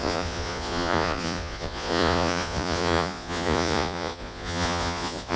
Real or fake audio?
fake